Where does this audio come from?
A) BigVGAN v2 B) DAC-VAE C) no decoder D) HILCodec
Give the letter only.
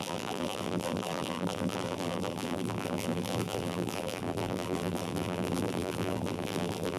A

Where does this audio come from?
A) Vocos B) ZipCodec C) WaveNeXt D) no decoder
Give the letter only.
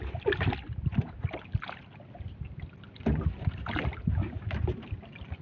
D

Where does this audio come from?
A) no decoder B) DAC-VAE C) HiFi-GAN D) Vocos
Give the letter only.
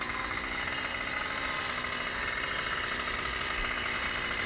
A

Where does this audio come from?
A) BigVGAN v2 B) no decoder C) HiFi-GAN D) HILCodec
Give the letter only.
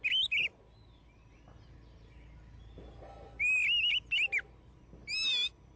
B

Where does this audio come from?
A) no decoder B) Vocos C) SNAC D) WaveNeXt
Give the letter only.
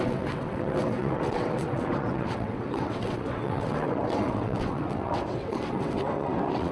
D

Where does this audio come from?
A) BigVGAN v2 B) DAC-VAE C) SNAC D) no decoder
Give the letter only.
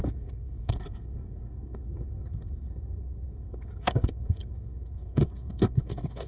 C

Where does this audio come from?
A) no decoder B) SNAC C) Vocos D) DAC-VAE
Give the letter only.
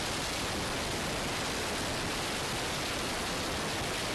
A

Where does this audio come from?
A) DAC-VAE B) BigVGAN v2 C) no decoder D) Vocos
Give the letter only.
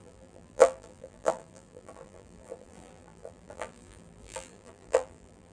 B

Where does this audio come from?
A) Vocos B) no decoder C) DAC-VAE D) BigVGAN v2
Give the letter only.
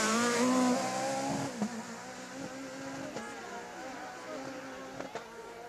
B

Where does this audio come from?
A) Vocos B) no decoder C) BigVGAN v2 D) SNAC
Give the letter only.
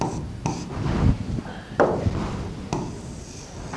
C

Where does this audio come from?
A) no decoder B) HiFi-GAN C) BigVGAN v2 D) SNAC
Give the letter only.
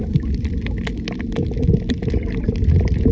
A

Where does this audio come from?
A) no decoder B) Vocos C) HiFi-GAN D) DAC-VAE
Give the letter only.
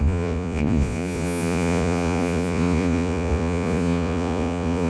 B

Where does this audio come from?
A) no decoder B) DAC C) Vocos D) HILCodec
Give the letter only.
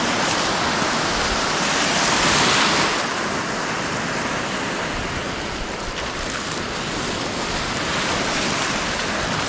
A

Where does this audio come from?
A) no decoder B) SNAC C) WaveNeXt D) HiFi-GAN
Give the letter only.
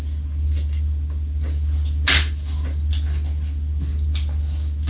A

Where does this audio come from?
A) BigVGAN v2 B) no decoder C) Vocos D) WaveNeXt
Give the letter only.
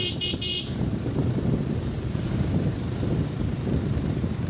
A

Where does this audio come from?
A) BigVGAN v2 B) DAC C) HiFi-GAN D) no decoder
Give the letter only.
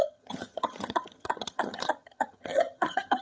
C